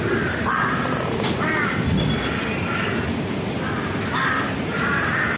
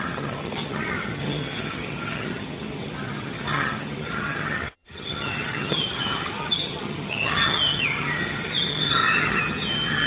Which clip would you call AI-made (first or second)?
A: second